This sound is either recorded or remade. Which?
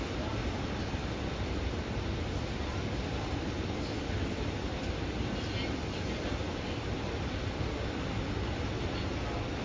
recorded